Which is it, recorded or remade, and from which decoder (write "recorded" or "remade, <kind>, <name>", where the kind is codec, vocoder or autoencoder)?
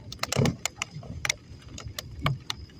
recorded